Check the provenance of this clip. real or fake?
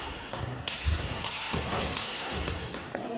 fake